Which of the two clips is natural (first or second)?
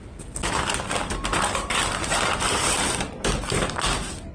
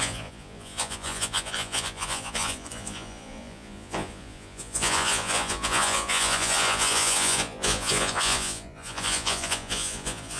first